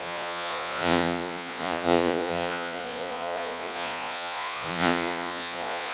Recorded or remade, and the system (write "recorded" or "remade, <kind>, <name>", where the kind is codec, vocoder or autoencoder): remade, vocoder, Vocos